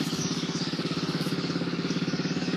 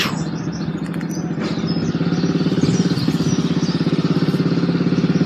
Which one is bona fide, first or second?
second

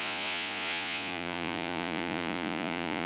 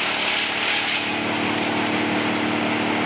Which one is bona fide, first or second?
second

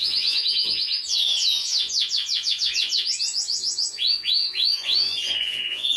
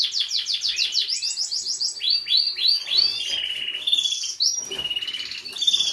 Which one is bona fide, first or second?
second